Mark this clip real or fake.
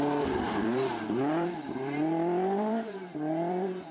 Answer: fake